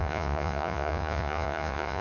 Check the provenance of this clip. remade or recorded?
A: remade